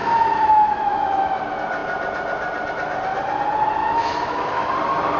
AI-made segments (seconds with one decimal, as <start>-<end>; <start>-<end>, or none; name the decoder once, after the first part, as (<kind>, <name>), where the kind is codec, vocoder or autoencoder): 0.0-1.4 (autoencoder, DAC-VAE); 3.8-4.7